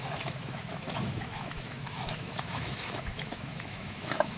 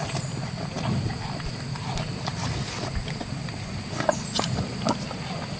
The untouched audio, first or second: second